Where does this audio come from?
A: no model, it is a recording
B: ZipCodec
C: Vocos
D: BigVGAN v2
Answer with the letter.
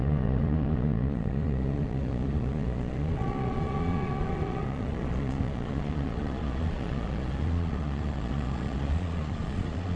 C